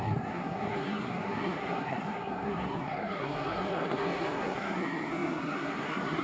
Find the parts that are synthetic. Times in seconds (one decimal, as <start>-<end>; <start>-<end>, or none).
0.0-6.2